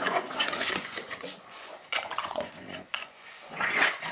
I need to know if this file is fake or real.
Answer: fake